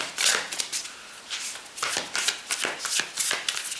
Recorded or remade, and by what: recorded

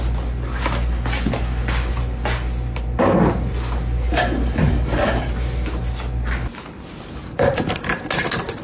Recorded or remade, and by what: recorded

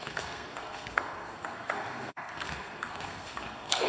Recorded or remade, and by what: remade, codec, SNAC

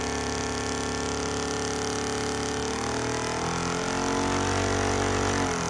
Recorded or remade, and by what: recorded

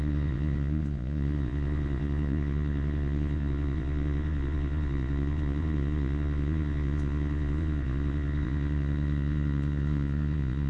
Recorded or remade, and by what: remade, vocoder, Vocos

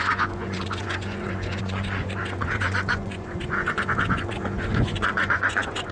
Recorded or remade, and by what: remade, vocoder, Vocos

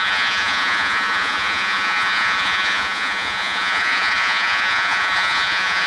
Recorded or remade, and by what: remade, vocoder, Vocos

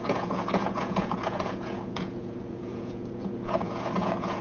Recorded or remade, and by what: remade, vocoder, Vocos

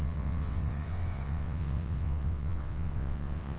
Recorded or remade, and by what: remade, vocoder, WaveNeXt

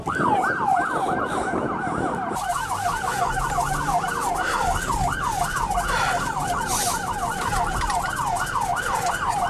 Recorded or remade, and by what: recorded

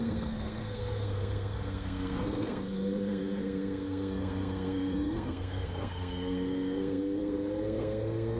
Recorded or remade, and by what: remade, codec, SNAC